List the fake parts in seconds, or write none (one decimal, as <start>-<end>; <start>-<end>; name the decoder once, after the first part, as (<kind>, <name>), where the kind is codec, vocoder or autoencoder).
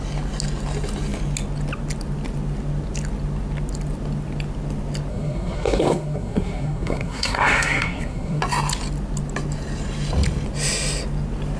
5.1-8.4 (codec, SNAC)